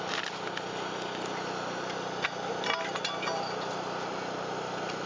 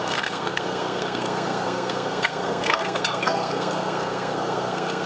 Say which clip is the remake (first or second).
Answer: second